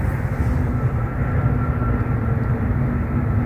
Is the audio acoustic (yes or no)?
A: yes